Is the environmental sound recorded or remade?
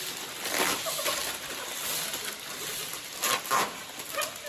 recorded